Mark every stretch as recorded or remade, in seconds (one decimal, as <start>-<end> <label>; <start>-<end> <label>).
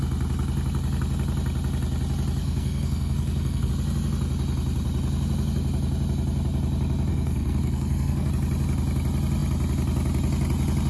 0.0-2.4 recorded; 2.4-3.7 remade; 3.7-7.1 recorded; 7.1-8.3 remade; 8.3-10.9 recorded